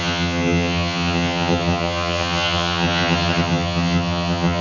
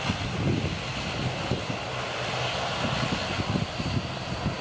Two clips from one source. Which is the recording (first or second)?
second